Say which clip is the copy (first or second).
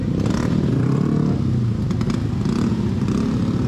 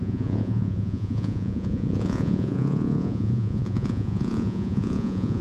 second